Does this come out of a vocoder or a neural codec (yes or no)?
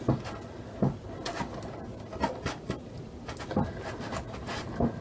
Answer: no